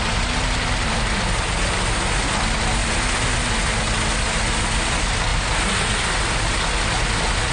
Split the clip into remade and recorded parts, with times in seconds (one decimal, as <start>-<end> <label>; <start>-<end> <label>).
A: 0.0-7.5 recorded